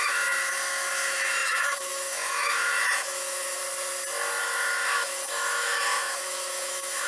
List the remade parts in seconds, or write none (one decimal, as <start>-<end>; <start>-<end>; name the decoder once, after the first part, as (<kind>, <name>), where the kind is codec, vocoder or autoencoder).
0.0-3.6 (autoencoder, DAC-VAE); 4.4-7.1